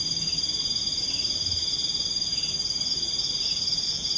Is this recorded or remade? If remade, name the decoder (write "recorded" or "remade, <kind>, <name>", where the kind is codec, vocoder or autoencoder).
recorded